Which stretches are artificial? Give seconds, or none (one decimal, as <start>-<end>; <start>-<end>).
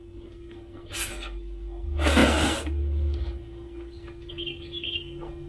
0.0-5.5